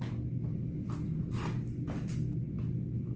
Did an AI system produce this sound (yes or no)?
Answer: no